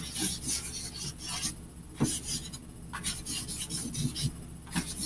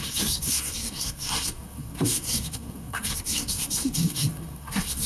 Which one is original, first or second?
first